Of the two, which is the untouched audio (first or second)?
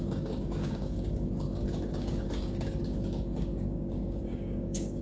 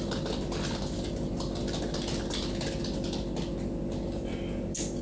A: second